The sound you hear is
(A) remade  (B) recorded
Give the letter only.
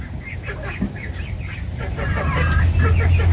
B